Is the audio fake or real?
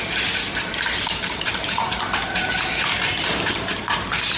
real